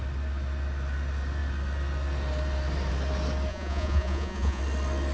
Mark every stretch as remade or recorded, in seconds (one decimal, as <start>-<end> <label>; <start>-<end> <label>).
0.0-3.5 recorded; 3.5-4.6 remade; 4.6-5.1 recorded